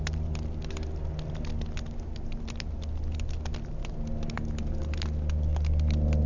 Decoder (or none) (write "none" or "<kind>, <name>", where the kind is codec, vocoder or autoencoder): none